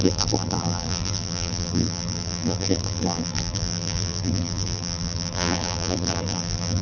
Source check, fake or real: fake